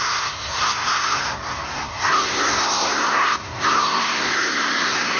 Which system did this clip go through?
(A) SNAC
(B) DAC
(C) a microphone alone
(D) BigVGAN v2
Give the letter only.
A